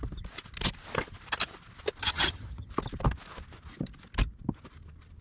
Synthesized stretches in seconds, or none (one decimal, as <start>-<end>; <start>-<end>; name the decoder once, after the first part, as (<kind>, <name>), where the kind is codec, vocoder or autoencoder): 2.0-2.7 (vocoder, HiFi-GAN)